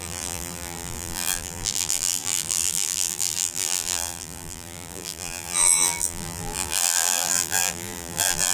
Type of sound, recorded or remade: remade